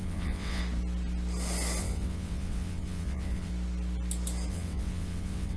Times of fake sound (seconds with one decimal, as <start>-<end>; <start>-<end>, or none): 0.0-0.6; 1.8-3.5; 4.5-5.6

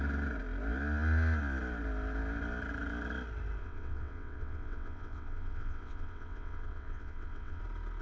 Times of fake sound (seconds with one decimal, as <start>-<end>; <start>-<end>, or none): 3.6-7.6

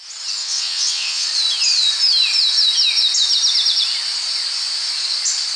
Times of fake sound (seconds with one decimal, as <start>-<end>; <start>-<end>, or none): 0.4-1.3

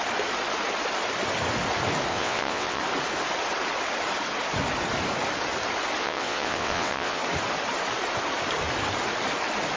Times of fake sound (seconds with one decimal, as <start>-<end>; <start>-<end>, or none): 2.1-2.8; 6.0-7.2

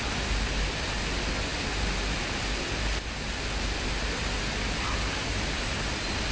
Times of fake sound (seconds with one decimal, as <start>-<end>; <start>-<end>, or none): none

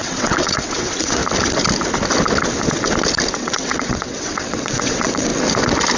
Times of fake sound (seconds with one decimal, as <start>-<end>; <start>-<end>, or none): 0.0-1.2; 3.4-5.3

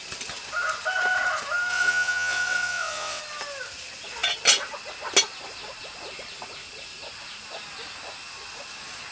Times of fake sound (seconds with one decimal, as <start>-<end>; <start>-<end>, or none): 1.7-3.2

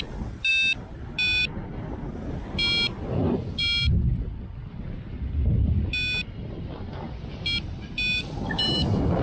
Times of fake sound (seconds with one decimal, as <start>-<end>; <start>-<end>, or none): none